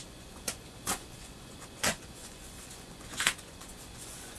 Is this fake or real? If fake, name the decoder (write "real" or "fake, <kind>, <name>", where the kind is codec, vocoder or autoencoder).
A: fake, vocoder, Vocos